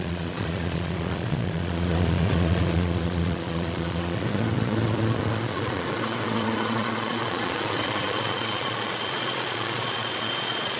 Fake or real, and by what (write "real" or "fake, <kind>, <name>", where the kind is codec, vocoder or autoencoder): fake, vocoder, Vocos